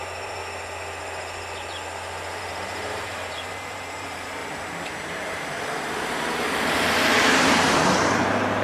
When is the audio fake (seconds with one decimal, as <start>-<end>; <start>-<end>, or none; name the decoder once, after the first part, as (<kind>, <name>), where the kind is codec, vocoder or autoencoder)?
0.0-0.4 (vocoder, BigVGAN v2); 2.4-8.6